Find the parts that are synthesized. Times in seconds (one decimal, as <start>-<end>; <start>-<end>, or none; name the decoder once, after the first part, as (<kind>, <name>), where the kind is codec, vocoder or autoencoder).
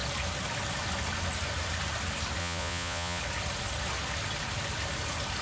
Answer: 2.4-3.2 (vocoder, Vocos)